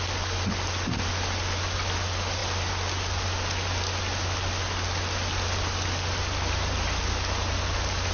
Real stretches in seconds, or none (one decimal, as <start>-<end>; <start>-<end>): 0.0-8.1